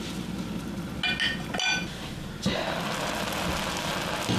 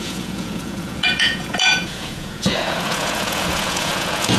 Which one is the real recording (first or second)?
first